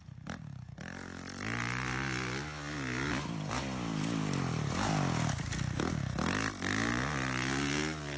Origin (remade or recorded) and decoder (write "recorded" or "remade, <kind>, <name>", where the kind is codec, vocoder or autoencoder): recorded